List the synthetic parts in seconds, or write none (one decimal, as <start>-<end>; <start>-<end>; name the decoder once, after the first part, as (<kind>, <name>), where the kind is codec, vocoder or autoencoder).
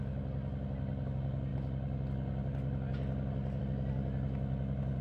none